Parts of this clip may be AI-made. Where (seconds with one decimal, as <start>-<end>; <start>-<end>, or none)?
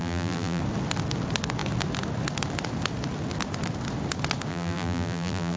0.0-0.6; 4.5-5.6